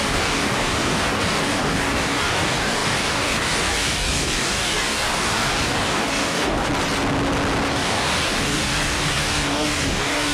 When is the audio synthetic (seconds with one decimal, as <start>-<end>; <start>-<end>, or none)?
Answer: 0.0-6.7; 7.7-10.3